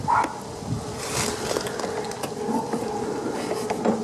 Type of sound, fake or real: real